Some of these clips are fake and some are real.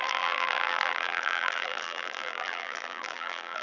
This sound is fake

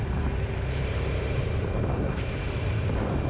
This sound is fake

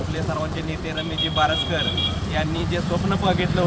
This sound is fake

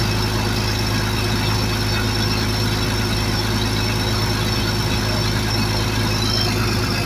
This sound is real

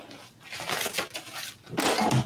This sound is real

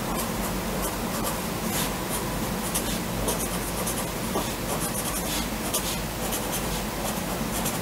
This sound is real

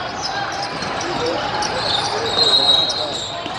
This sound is real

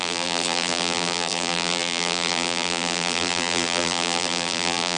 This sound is fake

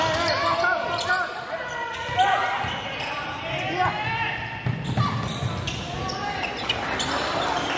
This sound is real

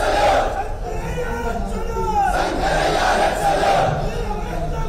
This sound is real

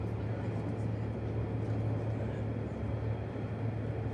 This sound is real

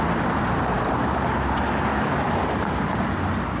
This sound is real